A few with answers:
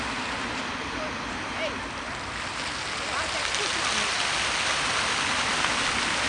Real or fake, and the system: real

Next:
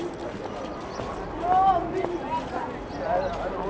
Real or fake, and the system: real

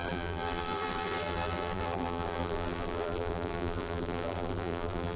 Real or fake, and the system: fake, vocoder, BigVGAN v2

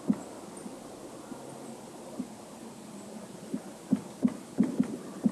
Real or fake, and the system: real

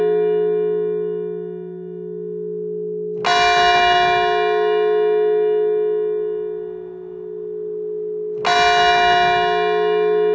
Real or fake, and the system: real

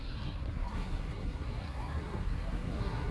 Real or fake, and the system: fake, codec, SNAC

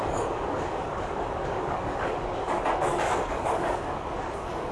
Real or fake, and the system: fake, codec, DAC